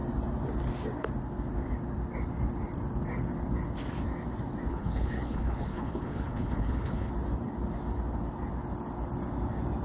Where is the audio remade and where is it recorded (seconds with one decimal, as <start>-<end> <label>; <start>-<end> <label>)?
0.0-4.7 recorded; 4.7-7.1 remade; 7.1-9.8 recorded